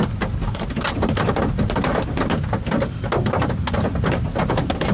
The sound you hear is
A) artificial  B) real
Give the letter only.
B